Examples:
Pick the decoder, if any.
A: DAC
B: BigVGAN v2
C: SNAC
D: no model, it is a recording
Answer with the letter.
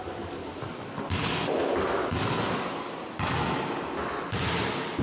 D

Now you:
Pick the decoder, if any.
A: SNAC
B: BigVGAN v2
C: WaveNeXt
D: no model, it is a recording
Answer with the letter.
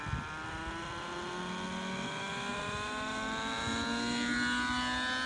D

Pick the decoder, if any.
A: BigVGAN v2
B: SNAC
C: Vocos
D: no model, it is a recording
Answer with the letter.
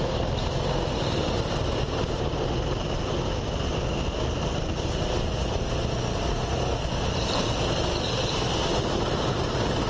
D